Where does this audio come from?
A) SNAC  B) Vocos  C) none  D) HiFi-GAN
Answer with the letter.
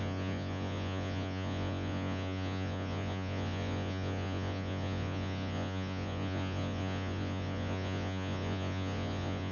B